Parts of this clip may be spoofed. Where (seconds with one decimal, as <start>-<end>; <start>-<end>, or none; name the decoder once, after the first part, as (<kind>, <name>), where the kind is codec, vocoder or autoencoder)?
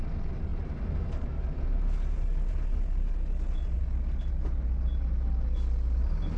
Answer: none